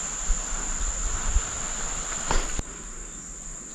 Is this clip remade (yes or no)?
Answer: no